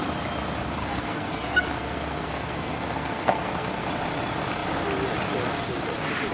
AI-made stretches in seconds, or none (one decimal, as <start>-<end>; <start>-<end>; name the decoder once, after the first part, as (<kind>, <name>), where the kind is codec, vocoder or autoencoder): 0.8-3.9 (codec, SNAC)

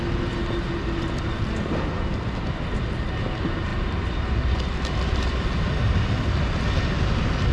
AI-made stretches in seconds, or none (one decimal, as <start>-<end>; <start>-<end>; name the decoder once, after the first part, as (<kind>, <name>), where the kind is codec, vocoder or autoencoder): none